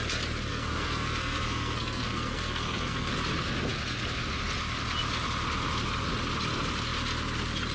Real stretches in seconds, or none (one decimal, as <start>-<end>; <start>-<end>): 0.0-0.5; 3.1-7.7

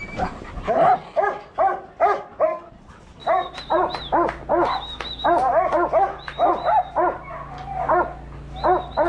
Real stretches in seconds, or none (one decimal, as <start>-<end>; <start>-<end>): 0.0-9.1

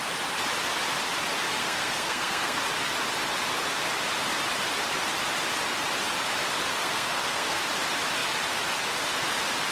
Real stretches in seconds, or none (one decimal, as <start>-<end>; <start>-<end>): 0.0-1.6; 2.6-6.7; 7.6-9.7

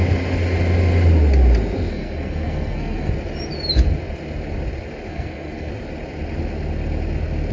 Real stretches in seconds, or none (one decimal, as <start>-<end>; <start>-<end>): 0.0-1.9; 3.1-5.1; 5.7-7.5

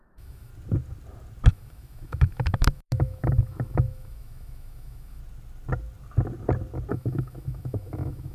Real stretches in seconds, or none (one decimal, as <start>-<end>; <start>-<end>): 0.5-1.5; 5.2-6.9

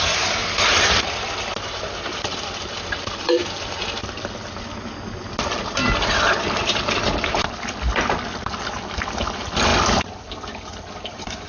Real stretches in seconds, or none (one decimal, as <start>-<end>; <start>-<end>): 0.4-2.0; 3.4-5.2; 5.8-6.7

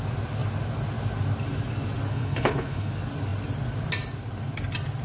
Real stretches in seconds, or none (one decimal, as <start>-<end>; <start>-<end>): 0.0-2.1; 2.9-5.0